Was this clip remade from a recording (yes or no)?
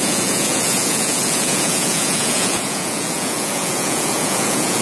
yes